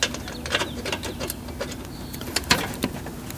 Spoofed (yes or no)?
no